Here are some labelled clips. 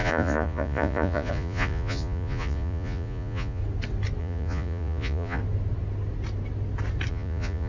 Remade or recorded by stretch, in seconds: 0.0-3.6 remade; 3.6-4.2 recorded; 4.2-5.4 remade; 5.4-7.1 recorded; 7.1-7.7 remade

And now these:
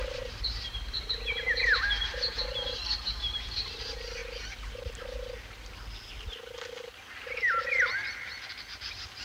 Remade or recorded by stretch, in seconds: 0.0-4.2 remade; 4.2-9.2 recorded

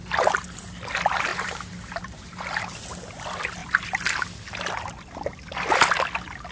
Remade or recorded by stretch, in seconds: 0.0-1.3 recorded; 1.3-2.6 remade; 2.6-6.5 recorded